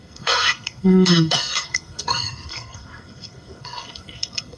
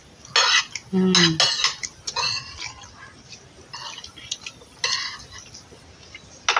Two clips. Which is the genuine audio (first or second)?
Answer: second